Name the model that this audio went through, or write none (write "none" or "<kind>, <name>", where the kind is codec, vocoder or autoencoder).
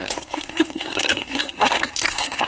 codec, SNAC